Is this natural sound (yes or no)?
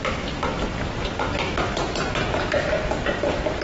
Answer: yes